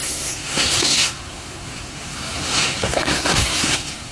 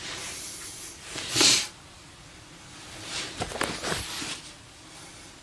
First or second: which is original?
second